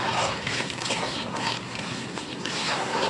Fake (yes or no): yes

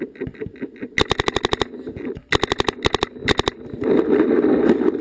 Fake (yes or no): no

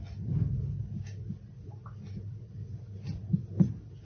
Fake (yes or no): no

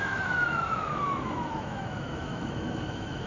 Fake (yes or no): yes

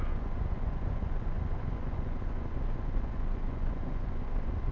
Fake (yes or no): yes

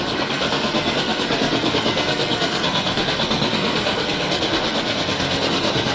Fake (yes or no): yes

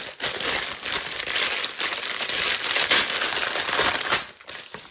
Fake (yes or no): no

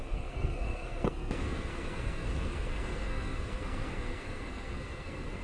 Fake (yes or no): yes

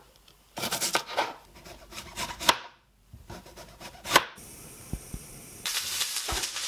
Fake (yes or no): yes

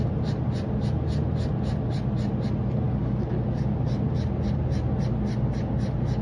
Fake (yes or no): no